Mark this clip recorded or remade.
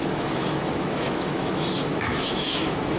remade